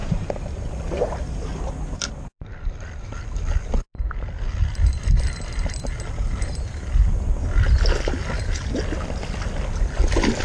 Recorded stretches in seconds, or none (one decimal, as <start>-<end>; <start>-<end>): 0.0-10.4